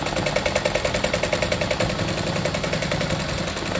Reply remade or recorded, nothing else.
recorded